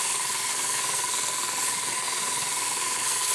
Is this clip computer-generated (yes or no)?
yes